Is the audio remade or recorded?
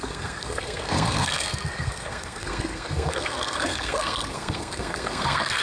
remade